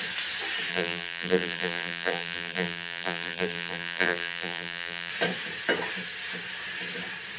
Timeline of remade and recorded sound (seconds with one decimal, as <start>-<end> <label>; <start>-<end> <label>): 0.0-0.7 recorded; 0.7-5.1 remade; 5.1-7.4 recorded